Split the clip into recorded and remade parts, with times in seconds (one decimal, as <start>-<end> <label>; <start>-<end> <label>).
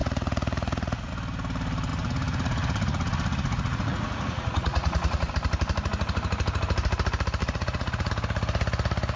0.0-1.1 remade; 1.1-1.9 recorded; 1.9-5.3 remade; 5.3-7.4 recorded; 7.4-8.1 remade; 8.1-9.2 recorded